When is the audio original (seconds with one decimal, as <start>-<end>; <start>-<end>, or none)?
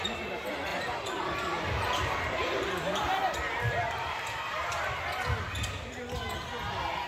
0.0-0.7; 5.0-7.1